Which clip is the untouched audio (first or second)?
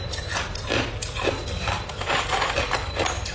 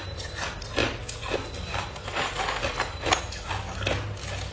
second